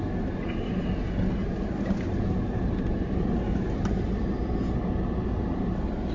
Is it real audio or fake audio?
real